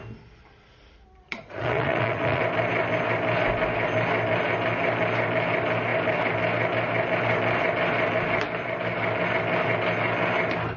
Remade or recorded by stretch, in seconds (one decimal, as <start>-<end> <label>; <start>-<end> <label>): 0.0-1.3 recorded; 1.3-2.4 remade; 2.4-10.8 recorded